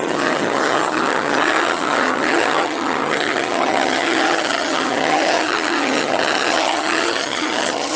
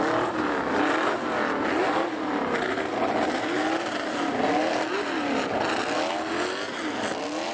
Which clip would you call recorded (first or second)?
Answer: second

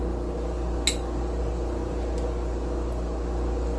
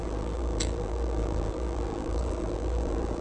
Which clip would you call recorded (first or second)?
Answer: first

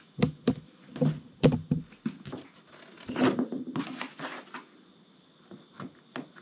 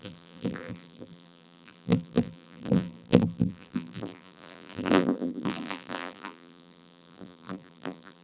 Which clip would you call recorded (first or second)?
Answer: first